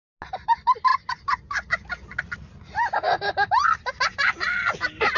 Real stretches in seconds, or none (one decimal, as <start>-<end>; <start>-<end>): 0.0-0.9; 1.7-5.2